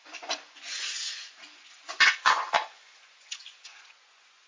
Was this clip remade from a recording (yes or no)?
yes